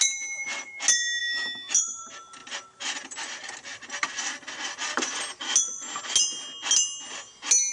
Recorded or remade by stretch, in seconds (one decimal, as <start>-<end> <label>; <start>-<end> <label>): 0.0-1.2 recorded; 1.2-2.0 remade; 2.0-7.7 recorded

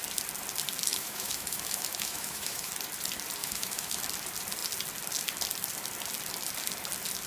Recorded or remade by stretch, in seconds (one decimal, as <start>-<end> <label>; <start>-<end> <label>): 0.0-0.9 recorded; 0.9-2.7 remade; 2.7-3.4 recorded; 3.4-4.0 remade; 4.0-7.3 recorded